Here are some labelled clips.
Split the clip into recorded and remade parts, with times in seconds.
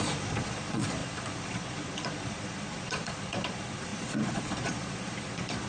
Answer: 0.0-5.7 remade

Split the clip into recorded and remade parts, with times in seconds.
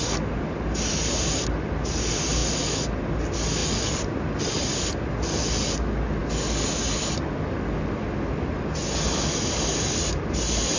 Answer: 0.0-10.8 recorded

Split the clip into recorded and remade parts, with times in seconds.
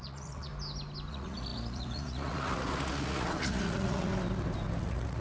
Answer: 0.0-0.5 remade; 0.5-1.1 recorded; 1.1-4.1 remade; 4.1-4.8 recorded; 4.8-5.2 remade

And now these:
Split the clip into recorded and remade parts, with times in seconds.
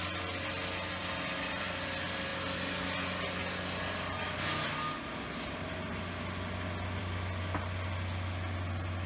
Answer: 0.0-9.1 recorded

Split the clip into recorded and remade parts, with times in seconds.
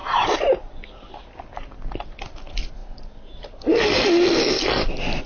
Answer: 0.0-5.3 recorded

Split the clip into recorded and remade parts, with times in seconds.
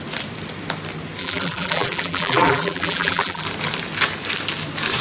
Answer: 0.0-1.2 recorded; 1.2-3.4 remade; 3.4-5.0 recorded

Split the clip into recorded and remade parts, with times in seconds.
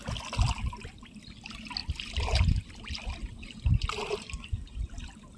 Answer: 0.0-5.4 recorded